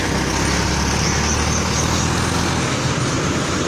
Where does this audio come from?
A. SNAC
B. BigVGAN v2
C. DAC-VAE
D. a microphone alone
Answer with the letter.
D